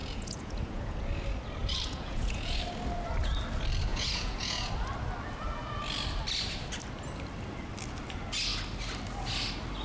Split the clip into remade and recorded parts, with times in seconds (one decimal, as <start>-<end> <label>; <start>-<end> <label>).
0.0-1.1 remade; 1.1-1.6 recorded; 1.6-2.6 remade; 2.6-3.9 recorded; 3.9-4.7 remade; 4.7-9.8 recorded